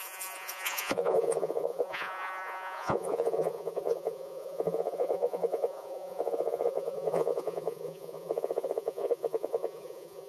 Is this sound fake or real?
fake